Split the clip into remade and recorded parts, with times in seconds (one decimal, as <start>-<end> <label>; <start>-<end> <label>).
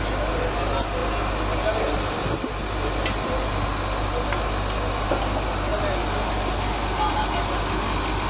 0.0-8.3 recorded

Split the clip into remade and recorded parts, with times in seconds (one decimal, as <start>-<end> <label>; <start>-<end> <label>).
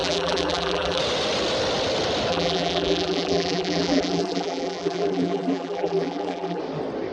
0.0-1.0 remade; 1.0-2.3 recorded; 2.3-6.6 remade; 6.6-7.1 recorded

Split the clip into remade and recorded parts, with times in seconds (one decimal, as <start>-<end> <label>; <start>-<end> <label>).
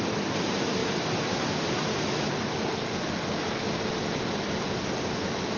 0.0-5.6 remade